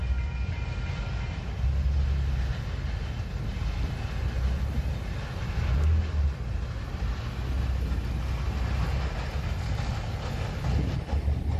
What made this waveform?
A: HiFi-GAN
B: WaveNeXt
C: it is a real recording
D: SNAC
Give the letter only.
C